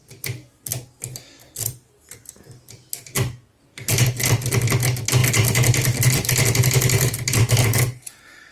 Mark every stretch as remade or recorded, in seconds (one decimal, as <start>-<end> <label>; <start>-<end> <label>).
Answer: 0.0-8.5 recorded